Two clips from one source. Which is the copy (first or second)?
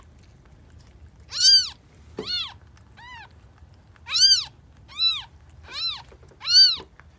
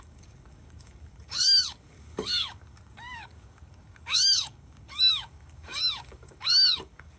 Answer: second